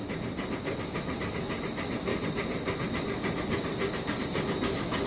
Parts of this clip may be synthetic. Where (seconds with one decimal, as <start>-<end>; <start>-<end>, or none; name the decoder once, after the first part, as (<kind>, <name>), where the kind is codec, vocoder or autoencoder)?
none